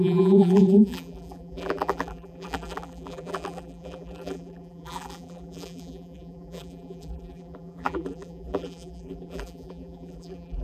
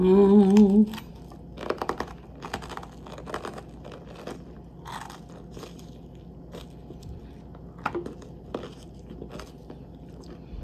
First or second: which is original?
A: second